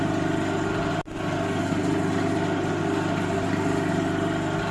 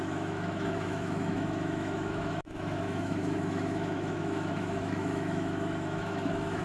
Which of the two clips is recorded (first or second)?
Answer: first